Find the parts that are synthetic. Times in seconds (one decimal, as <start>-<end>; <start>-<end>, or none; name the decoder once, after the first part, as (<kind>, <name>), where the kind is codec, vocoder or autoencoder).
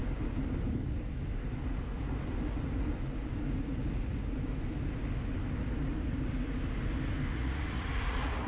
7.3-8.5 (vocoder, Vocos)